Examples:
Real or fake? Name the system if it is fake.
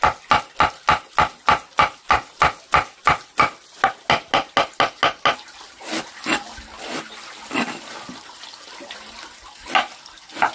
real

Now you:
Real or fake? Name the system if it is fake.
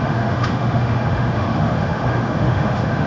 fake, autoencoder, DAC-VAE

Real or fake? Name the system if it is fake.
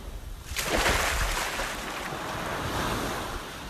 real